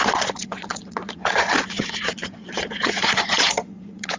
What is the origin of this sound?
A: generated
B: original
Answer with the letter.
A